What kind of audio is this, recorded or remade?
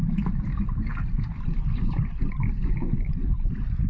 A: recorded